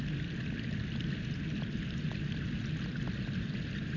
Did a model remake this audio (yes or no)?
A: no